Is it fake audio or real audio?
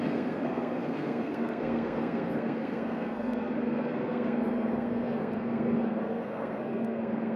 fake